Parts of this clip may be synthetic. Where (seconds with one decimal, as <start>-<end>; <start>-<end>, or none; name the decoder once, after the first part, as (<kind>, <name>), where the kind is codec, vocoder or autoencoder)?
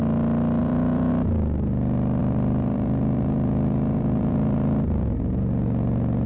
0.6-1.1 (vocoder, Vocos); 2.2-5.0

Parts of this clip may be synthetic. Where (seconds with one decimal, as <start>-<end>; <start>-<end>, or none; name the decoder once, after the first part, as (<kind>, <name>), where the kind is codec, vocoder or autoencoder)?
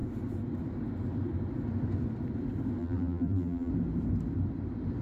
2.8-3.7 (vocoder, BigVGAN v2)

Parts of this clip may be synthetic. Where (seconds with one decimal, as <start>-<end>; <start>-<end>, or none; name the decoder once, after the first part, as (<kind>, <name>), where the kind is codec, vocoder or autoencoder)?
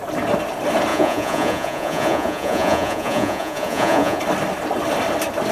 0.9-4.2 (vocoder, Vocos)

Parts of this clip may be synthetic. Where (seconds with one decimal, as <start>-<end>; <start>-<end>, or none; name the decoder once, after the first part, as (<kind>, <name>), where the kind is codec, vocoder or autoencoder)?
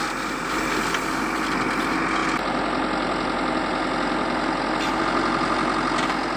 none